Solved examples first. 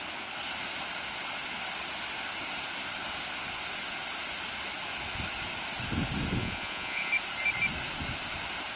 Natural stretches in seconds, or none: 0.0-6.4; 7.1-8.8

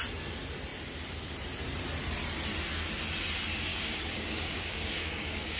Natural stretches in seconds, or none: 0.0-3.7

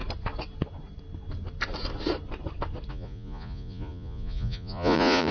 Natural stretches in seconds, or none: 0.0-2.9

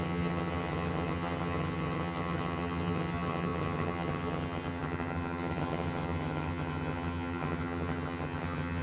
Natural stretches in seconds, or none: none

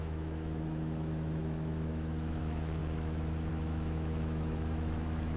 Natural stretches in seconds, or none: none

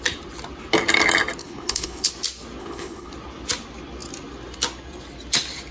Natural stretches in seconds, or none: 0.0-1.4; 2.1-2.6; 3.1-5.7

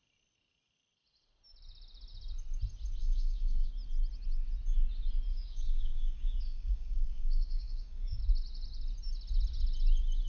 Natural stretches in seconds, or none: 0.0-3.0; 3.7-5.3; 8.2-10.3

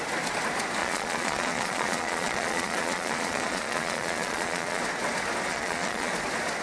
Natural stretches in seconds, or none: 0.0-0.8; 4.8-5.5; 6.1-6.6